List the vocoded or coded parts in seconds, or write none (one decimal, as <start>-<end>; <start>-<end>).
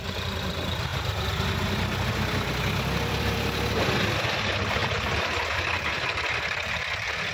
0.0-7.3